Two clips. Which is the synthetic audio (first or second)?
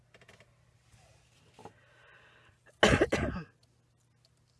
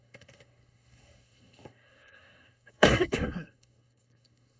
second